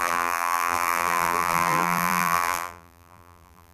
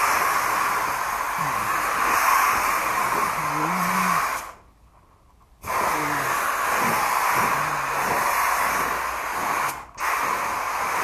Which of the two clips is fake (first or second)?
first